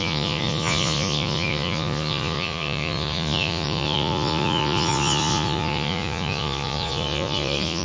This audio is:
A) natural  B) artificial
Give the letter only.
B